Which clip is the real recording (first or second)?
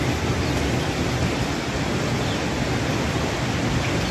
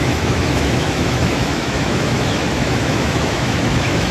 first